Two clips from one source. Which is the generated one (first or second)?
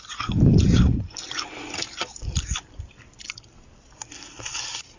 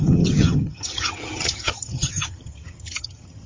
second